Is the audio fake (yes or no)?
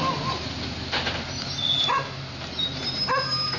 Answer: no